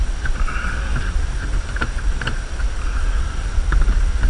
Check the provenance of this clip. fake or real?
real